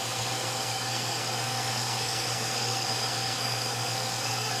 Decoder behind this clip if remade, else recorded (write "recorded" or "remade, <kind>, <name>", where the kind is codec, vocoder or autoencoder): remade, codec, SNAC